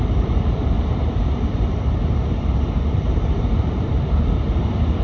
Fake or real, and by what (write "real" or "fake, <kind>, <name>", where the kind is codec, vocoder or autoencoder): fake, vocoder, BigVGAN v2